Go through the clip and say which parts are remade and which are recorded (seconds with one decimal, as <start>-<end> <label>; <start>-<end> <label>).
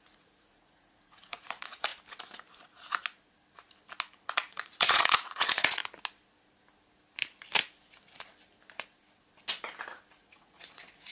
0.0-1.9 remade; 1.9-4.2 recorded; 4.2-5.8 remade; 5.8-10.2 recorded; 10.2-11.1 remade